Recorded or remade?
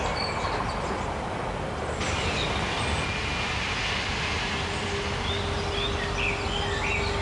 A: recorded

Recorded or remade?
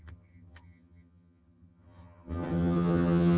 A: remade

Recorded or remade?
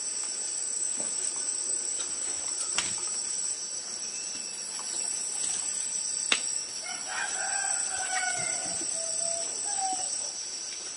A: recorded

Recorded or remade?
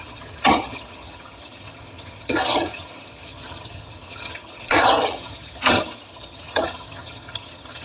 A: remade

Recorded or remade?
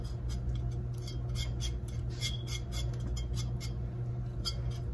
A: recorded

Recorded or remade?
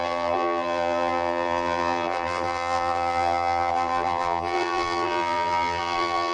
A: remade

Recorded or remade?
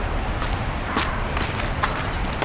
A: recorded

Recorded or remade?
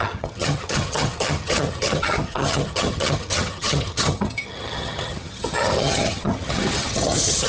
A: remade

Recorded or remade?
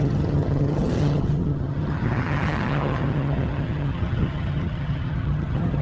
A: remade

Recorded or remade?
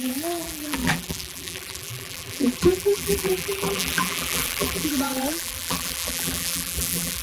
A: remade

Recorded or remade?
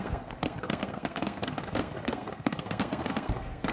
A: remade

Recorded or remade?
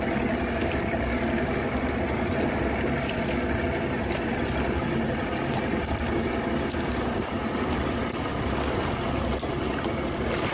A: recorded